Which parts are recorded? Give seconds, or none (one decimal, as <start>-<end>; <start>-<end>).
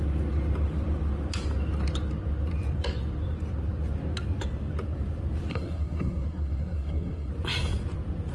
0.0-5.5; 7.3-8.3